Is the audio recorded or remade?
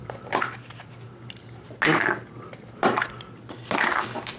recorded